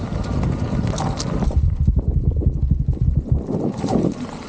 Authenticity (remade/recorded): recorded